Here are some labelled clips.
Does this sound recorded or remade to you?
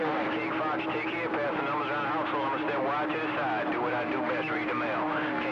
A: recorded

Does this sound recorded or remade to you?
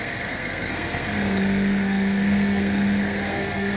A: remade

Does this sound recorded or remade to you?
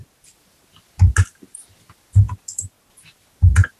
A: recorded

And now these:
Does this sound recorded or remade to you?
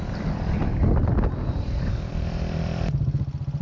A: recorded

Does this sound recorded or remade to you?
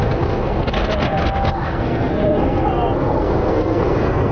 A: remade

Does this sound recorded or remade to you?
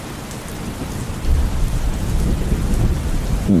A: recorded